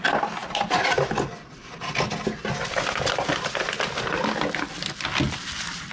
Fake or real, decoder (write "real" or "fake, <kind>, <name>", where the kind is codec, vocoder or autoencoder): real